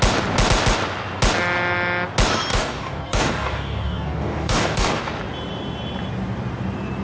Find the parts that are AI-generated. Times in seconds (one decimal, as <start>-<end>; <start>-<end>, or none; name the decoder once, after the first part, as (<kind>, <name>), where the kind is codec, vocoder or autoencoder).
2.5-5.0 (codec, DAC)